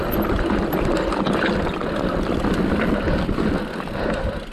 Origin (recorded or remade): recorded